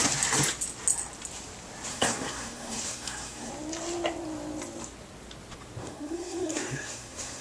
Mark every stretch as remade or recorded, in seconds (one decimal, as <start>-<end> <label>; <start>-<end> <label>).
0.0-1.9 recorded; 1.9-3.5 remade; 3.5-5.8 recorded; 5.8-7.4 remade